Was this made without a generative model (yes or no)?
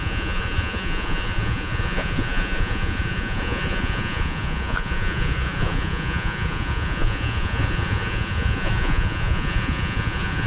no